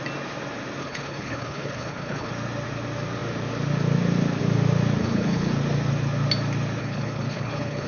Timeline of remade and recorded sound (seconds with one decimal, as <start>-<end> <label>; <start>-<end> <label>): 0.0-0.8 recorded; 0.8-2.3 remade; 2.3-5.0 recorded; 5.0-5.5 remade; 5.5-6.8 recorded; 6.8-7.9 remade